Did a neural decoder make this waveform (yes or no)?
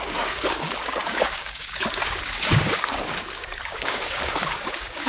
yes